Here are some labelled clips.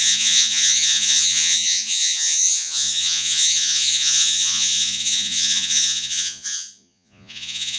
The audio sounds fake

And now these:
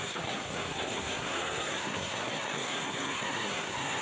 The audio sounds fake